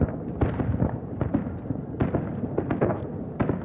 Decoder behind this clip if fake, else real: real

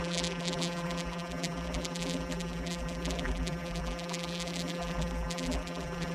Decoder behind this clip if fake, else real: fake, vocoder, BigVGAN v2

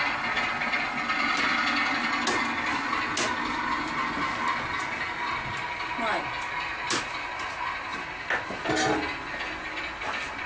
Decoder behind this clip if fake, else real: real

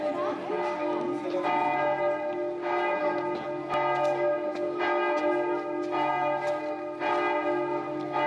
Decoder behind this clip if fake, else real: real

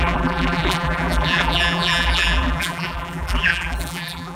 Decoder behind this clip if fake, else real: fake, vocoder, BigVGAN v2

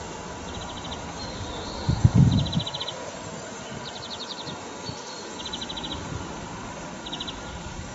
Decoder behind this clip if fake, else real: real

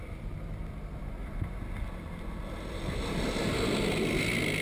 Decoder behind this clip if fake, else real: real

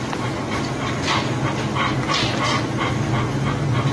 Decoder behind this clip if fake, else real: real